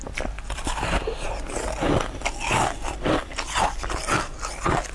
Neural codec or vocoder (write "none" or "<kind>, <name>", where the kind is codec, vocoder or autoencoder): none